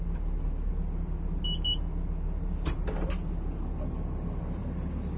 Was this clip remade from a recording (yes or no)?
no